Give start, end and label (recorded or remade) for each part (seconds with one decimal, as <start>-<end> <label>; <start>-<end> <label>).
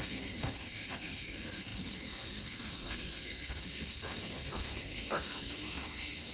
0.0-6.3 remade